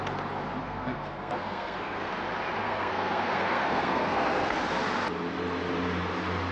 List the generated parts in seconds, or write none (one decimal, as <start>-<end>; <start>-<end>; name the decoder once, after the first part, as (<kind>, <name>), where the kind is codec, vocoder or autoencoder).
0.6-2.1 (codec, SNAC); 2.6-4.6